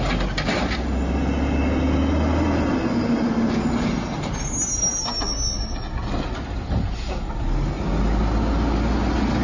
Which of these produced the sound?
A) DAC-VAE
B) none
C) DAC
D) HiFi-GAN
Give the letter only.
B